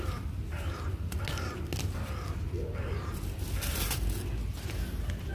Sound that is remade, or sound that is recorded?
recorded